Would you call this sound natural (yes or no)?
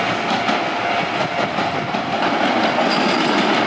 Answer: yes